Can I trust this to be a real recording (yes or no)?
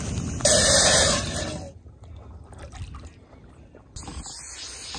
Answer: yes